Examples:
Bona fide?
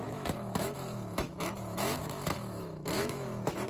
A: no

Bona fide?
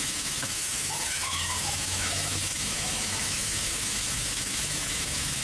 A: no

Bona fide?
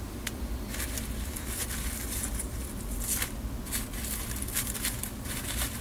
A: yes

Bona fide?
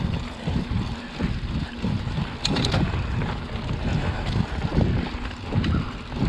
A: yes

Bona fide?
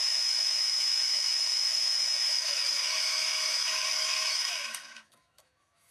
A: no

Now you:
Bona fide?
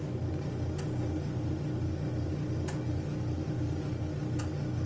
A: yes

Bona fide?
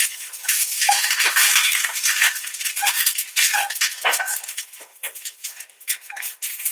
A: no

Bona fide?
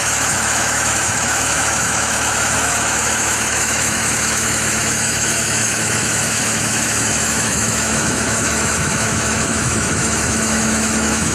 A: no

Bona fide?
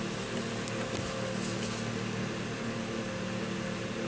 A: yes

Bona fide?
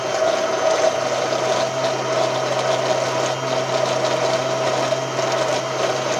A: yes